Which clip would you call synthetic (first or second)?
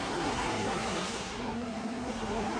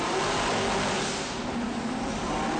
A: first